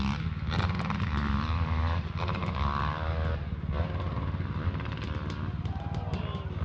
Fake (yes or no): no